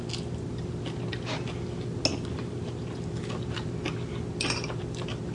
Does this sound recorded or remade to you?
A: recorded